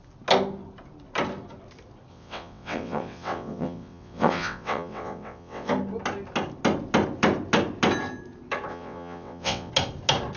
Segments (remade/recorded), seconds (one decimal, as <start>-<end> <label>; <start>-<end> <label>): 0.0-2.1 recorded; 2.1-5.7 remade; 5.7-8.7 recorded; 8.7-9.7 remade; 9.7-10.4 recorded